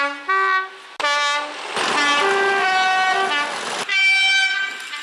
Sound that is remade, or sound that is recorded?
recorded